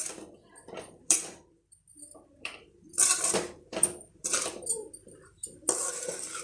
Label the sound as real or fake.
fake